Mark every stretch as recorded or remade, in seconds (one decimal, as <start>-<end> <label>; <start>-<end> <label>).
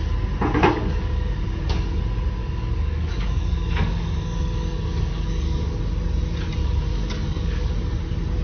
0.0-0.6 recorded; 0.6-2.0 remade; 2.0-2.4 recorded; 2.4-5.8 remade; 5.8-6.6 recorded; 6.6-7.7 remade; 7.7-8.4 recorded